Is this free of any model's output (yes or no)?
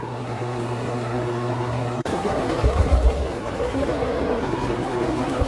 no